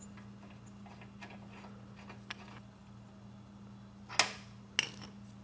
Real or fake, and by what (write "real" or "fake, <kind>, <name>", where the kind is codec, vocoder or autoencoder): real